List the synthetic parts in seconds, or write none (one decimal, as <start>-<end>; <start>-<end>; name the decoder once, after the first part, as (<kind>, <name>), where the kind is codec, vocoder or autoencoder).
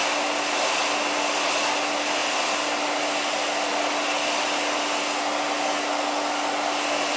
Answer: none